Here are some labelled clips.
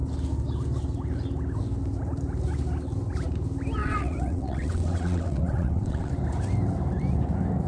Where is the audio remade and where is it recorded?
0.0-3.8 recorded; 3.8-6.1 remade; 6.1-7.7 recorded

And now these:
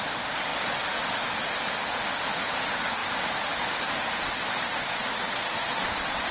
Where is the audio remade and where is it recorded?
0.0-5.2 recorded; 5.2-5.8 remade; 5.8-6.3 recorded

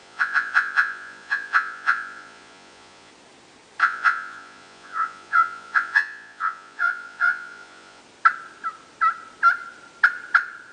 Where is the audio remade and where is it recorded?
0.0-3.1 remade; 3.1-3.8 recorded; 3.8-8.0 remade; 8.0-10.7 recorded

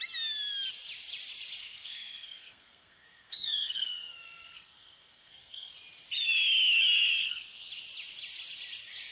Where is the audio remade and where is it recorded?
0.0-1.6 recorded; 1.6-5.7 remade; 5.7-7.2 recorded; 7.2-7.7 remade; 7.7-9.1 recorded

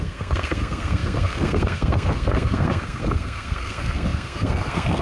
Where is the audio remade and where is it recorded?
0.0-5.0 remade